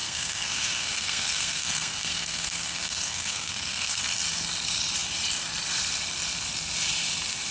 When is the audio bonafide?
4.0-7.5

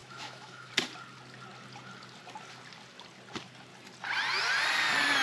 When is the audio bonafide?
0.7-5.2